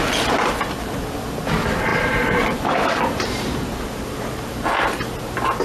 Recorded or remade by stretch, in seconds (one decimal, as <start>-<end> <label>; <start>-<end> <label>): 0.0-1.9 recorded; 1.9-5.6 remade